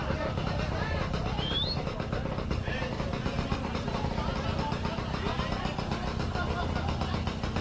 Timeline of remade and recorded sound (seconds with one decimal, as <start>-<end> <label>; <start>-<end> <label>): 0.0-4.3 remade; 4.3-7.6 recorded